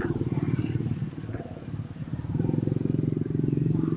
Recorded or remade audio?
recorded